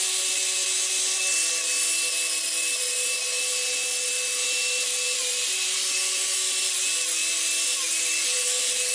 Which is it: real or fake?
real